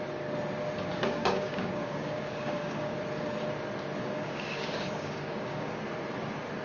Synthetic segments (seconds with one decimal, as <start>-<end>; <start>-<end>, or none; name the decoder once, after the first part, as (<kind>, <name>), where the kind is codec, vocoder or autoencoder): 0.9-3.0 (codec, DAC); 4.0-5.8